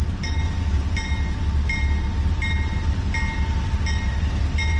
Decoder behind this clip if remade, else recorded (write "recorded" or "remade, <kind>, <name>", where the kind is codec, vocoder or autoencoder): recorded